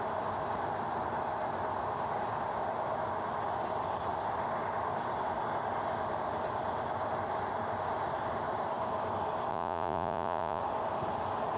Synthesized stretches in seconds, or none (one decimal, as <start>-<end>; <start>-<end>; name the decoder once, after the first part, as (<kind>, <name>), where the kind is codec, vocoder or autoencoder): 9.5-10.6 (vocoder, Vocos)

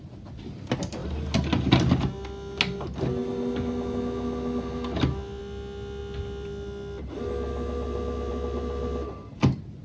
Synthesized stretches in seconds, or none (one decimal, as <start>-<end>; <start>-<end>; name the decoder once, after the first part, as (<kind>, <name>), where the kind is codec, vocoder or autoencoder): none

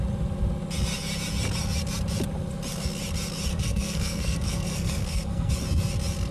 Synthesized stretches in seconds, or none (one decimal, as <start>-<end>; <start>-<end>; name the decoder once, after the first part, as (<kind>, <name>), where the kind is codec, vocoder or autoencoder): 3.5-5.5 (codec, SNAC)

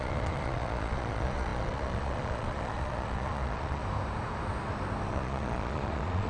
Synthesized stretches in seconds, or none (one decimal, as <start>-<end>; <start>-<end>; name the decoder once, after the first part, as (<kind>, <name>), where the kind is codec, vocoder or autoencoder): 0.0-3.8 (vocoder, Vocos); 5.1-6.3

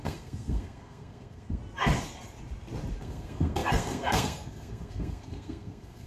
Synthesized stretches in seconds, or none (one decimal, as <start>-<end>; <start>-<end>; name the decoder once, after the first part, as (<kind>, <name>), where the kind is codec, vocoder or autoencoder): 0.0-1.6 (codec, SNAC); 3.0-6.1